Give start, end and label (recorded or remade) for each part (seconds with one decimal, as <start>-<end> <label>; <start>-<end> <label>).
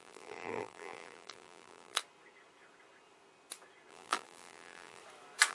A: 0.0-2.0 remade; 2.0-3.9 recorded; 3.9-5.0 remade; 5.0-5.5 recorded